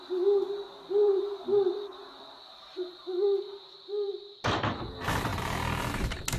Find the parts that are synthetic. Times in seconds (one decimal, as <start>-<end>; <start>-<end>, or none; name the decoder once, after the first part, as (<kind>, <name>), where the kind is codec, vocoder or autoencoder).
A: 1.0-4.8 (vocoder, BigVGAN v2)

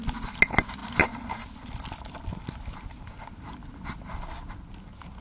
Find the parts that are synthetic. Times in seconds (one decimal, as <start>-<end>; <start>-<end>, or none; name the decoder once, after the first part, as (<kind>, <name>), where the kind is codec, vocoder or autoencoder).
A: none

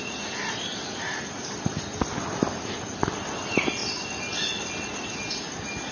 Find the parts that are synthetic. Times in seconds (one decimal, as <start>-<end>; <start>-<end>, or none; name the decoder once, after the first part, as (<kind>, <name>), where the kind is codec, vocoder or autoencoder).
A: none